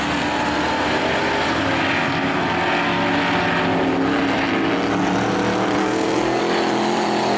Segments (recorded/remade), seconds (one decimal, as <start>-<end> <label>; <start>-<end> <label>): 0.0-5.8 recorded; 5.8-6.4 remade; 6.4-7.4 recorded